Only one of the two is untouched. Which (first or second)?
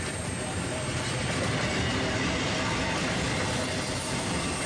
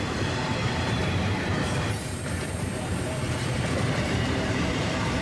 first